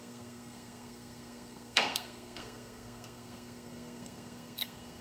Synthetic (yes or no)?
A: yes